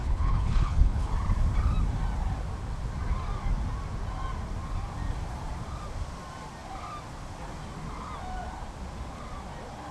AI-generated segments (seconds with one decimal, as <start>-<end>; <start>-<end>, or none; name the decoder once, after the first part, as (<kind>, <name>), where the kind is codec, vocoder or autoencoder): 0.0-1.1 (codec, HILCodec)